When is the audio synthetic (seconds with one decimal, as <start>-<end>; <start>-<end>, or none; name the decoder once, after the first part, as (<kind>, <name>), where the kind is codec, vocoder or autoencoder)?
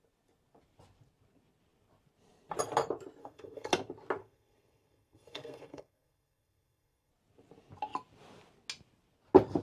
3.2-3.7 (codec, SNAC); 4.2-7.1